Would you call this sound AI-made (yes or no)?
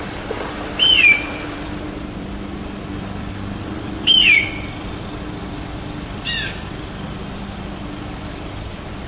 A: yes